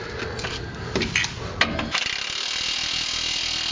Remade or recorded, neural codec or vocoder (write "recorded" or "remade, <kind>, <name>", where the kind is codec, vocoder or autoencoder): recorded